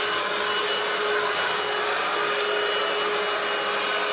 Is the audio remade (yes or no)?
no